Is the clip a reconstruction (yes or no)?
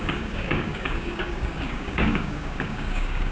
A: yes